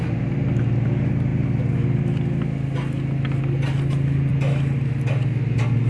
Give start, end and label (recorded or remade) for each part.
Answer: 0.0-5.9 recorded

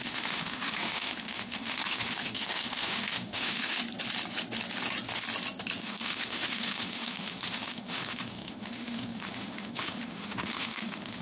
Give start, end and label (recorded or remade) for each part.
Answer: 0.0-3.8 remade; 3.8-5.8 recorded; 5.8-11.2 remade

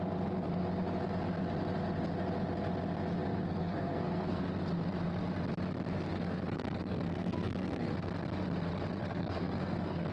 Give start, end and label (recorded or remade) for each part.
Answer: 0.0-3.3 recorded; 3.3-4.4 remade; 4.4-6.1 recorded; 6.1-8.1 remade; 8.1-9.0 recorded; 9.0-10.1 remade

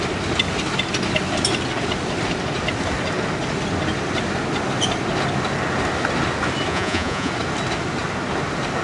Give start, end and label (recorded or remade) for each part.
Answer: 0.0-6.7 recorded; 6.7-7.3 remade; 7.3-8.8 recorded